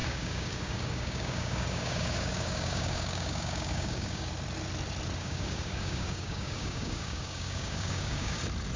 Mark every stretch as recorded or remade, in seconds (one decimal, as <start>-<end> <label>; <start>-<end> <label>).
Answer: 0.0-4.3 remade; 4.3-5.2 recorded; 5.2-8.4 remade; 8.4-8.8 recorded